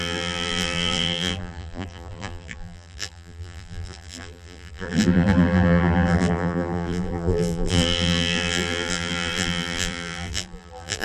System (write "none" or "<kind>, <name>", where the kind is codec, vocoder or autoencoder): vocoder, BigVGAN v2